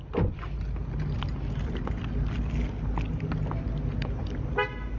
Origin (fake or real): real